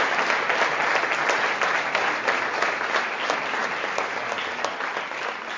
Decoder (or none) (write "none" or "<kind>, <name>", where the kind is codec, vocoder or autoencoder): none